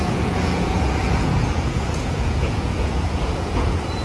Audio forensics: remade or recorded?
remade